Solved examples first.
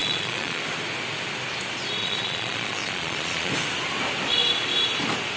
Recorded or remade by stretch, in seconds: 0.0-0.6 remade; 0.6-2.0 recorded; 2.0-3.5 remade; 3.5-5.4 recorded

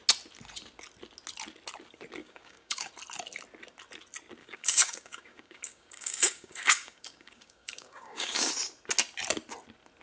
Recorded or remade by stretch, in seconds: 0.0-2.2 recorded; 2.2-2.9 remade; 2.9-4.4 recorded; 4.4-8.5 remade; 8.5-10.0 recorded

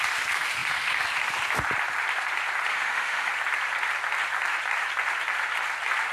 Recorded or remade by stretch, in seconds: 0.0-2.7 recorded; 2.7-3.3 remade; 3.3-6.1 recorded